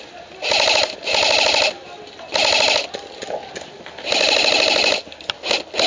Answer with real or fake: real